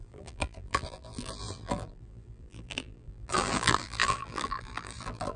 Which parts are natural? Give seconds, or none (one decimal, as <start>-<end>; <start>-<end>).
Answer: none